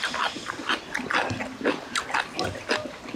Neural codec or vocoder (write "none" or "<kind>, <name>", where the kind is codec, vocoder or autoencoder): none